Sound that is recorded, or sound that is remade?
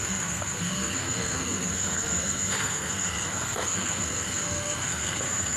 remade